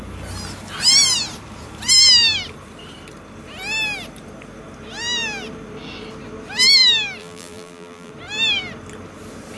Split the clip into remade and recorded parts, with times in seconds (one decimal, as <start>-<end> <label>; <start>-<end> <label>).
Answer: 0.0-7.2 recorded; 7.2-8.1 remade; 8.1-9.6 recorded